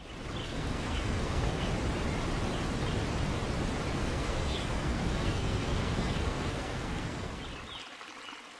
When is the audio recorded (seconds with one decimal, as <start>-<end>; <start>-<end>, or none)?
0.0-0.4; 1.7-4.0; 7.4-8.6